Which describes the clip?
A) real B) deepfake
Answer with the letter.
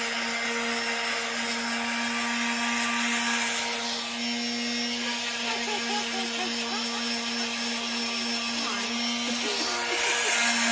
A